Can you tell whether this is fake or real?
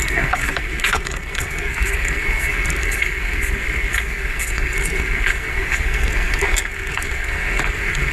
fake